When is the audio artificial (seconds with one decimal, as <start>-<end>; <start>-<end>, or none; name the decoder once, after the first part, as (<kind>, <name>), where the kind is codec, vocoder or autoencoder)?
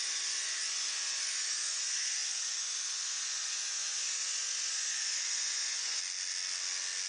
0.0-6.0 (vocoder, Vocos)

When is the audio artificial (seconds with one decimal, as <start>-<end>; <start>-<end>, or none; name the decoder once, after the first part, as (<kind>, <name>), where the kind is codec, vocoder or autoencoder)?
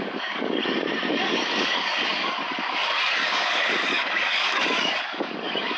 0.0-0.6 (codec, DAC); 1.1-5.8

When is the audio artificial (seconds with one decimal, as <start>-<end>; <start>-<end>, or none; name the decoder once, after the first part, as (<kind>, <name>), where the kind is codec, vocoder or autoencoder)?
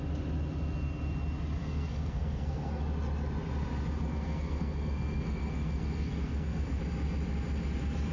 1.6-2.8 (codec, SNAC); 4.1-6.8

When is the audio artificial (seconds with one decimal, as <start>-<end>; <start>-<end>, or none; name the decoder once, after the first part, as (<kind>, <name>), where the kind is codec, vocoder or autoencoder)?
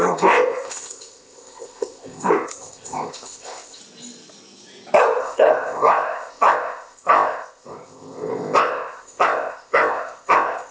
0.0-3.8 (codec, ZipCodec); 5.2-10.7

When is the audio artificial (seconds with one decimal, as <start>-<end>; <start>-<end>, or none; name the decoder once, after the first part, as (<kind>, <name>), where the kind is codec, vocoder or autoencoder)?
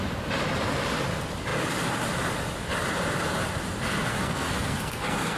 4.1-5.4 (codec, SNAC)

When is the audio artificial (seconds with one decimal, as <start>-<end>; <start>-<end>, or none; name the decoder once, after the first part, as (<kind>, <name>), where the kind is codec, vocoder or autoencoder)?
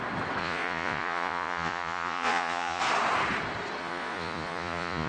0.4-2.8 (vocoder, Vocos); 3.8-5.1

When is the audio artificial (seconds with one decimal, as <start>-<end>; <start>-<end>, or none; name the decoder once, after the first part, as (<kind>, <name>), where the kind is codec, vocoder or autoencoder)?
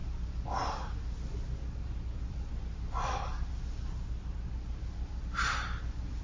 none